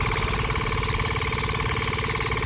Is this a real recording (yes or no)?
yes